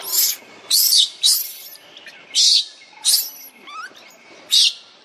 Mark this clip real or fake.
real